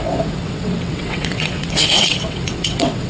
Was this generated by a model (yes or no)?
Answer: yes